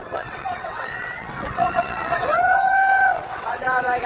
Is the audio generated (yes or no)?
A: yes